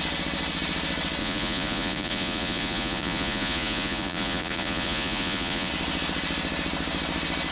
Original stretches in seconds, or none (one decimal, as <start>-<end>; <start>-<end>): 0.0-1.2; 5.7-7.5